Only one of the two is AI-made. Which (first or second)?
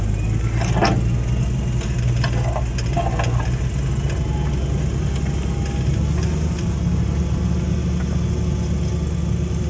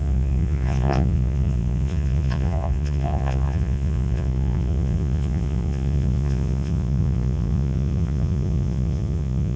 second